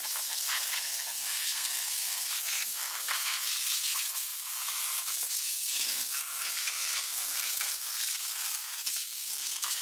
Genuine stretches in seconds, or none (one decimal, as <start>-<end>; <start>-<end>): none